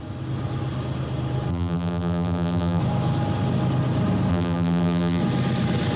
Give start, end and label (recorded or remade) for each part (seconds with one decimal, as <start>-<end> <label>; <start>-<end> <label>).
0.0-1.5 recorded; 1.5-2.8 remade; 2.8-4.3 recorded; 4.3-5.2 remade; 5.2-6.0 recorded